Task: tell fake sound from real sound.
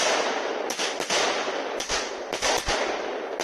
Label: real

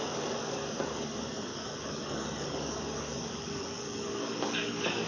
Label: fake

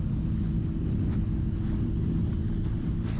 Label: real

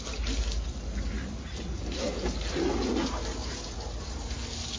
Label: real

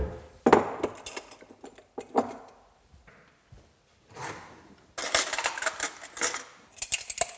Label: real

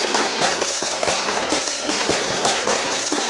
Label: fake